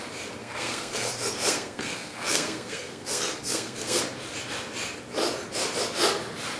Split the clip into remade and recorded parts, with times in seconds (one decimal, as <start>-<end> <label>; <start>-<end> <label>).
0.0-0.4 recorded; 0.4-4.0 remade; 4.0-6.6 recorded